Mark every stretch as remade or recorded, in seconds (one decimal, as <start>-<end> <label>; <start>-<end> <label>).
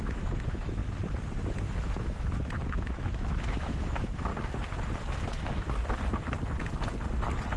0.0-0.8 remade; 0.8-1.8 recorded; 1.8-4.3 remade; 4.3-7.6 recorded